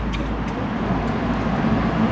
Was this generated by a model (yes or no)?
no